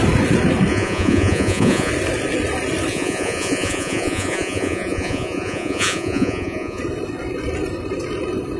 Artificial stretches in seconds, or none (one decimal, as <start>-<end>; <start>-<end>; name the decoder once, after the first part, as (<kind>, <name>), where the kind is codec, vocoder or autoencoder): 0.7-1.9 (vocoder, Vocos); 2.9-6.8